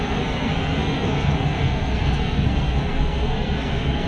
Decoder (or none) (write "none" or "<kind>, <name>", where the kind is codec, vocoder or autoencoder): codec, SNAC